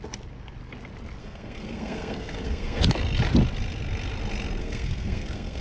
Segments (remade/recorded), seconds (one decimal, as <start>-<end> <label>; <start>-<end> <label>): 0.0-1.2 recorded; 1.2-2.8 remade; 2.8-4.6 recorded; 4.6-5.6 remade